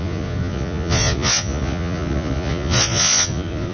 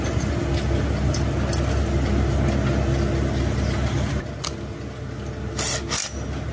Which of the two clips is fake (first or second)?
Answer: first